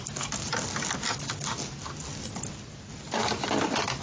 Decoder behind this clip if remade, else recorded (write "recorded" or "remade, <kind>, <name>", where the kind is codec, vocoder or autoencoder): recorded